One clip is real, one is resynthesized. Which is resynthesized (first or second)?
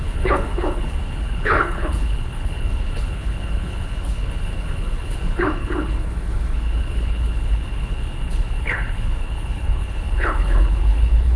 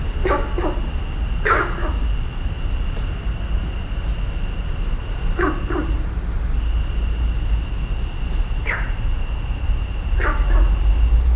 first